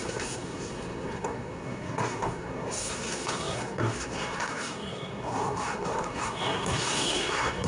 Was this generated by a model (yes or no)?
yes